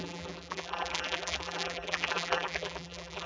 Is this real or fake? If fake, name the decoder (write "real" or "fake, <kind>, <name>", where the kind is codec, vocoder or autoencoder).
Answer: fake, vocoder, BigVGAN v2